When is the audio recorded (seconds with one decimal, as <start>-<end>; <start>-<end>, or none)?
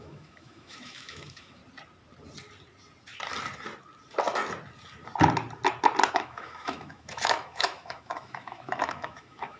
1.6-6.1